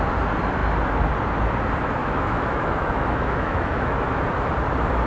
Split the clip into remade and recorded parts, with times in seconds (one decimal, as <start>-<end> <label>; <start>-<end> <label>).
0.0-2.0 recorded; 2.0-4.2 remade; 4.2-5.1 recorded